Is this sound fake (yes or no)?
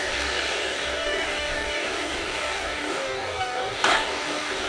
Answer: yes